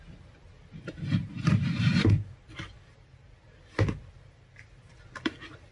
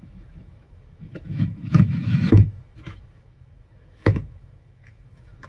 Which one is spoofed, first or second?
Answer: second